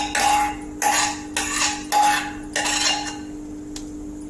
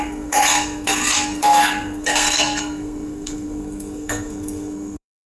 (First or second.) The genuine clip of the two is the first